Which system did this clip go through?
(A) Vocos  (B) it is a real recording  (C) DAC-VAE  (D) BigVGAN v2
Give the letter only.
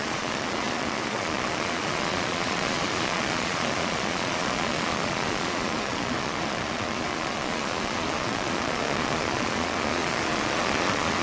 A